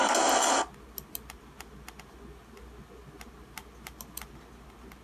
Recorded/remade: recorded